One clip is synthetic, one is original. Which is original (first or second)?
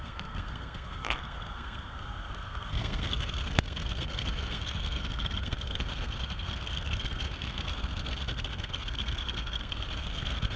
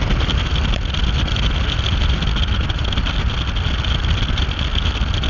second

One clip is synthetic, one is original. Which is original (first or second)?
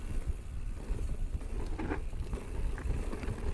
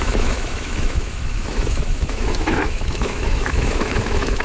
first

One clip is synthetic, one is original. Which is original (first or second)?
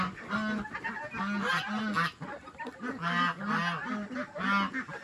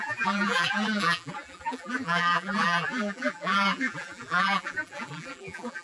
first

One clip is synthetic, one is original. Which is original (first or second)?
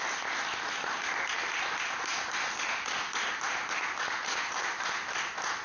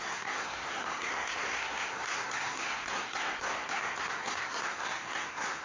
first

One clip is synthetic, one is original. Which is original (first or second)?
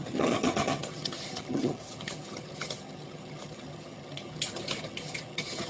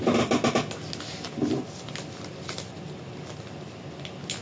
second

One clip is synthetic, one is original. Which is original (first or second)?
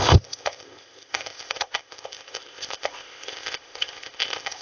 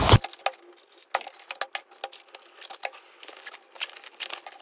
second